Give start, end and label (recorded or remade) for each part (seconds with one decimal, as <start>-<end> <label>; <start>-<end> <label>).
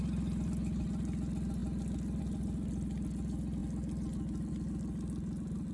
0.0-5.7 recorded